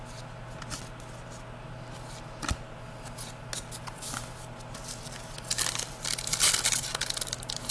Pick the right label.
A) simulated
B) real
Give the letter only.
B